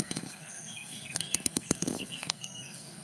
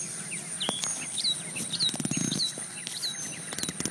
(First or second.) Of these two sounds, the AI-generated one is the first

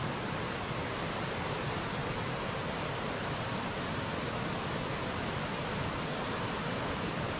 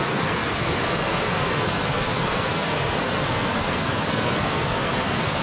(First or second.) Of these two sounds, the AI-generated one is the second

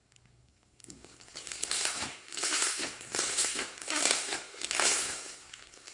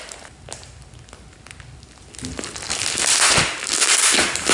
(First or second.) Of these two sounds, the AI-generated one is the first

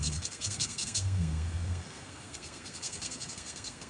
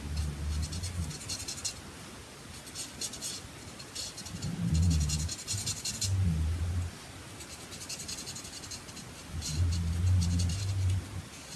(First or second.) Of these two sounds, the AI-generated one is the first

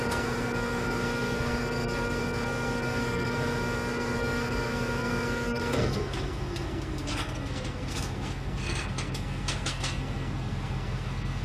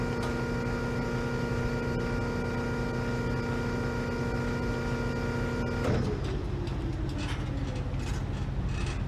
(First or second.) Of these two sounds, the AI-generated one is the first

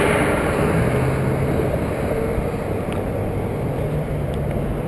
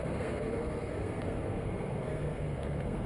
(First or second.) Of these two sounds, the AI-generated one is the second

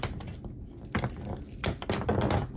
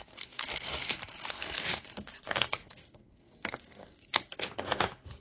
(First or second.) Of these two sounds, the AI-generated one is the second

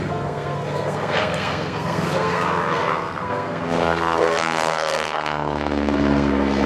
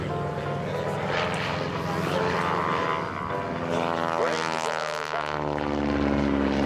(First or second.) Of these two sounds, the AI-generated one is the first